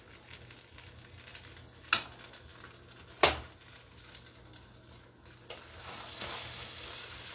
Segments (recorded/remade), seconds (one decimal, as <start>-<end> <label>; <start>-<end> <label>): 0.0-7.3 recorded